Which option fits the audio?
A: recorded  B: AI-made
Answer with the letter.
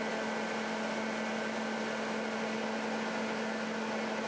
A